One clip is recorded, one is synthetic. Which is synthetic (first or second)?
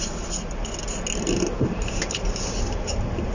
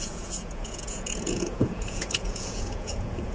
second